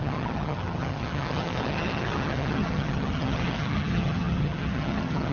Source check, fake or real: fake